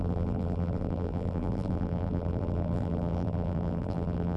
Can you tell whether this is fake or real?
fake